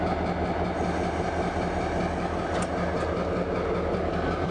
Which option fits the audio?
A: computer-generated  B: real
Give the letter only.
B